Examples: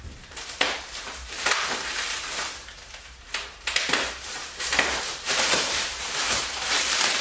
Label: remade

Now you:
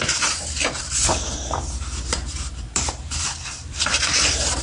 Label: remade